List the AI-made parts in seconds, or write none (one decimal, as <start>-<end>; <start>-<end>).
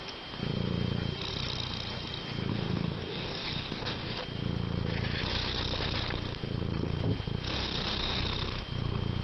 2.5-4.2; 7.5-8.2